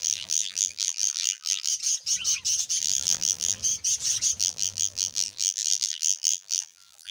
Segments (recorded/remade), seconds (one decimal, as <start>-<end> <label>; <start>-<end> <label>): 0.0-1.7 remade; 1.7-2.8 recorded; 2.8-3.6 remade; 3.6-4.4 recorded; 4.4-7.1 remade

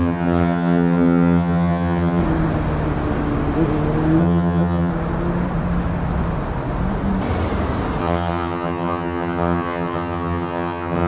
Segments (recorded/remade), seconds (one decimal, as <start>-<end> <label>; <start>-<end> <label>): 0.0-2.2 remade; 2.2-4.2 recorded; 4.2-4.9 remade; 4.9-8.0 recorded; 8.0-11.1 remade